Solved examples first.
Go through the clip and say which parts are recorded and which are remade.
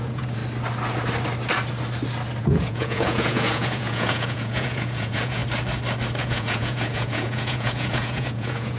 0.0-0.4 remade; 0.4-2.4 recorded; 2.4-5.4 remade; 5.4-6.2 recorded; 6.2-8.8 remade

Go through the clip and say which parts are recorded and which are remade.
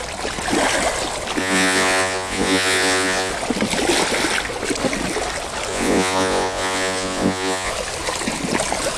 0.0-1.4 recorded; 1.4-3.3 remade; 3.3-5.7 recorded; 5.7-7.7 remade; 7.7-9.0 recorded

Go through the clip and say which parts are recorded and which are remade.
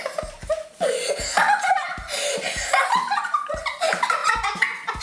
0.0-4.2 recorded; 4.2-5.0 remade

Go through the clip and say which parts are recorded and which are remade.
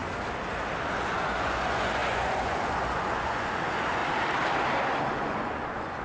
0.0-0.9 recorded; 0.9-4.0 remade; 4.0-5.1 recorded; 5.1-6.0 remade